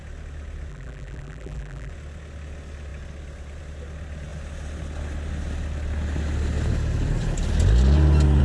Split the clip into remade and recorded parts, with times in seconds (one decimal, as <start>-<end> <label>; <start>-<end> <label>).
0.0-0.7 recorded; 0.7-1.9 remade; 1.9-8.4 recorded